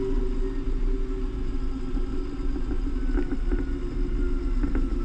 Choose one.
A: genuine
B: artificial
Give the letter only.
A